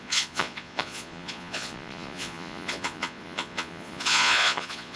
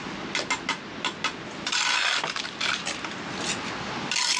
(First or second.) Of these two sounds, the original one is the second